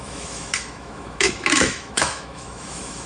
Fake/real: fake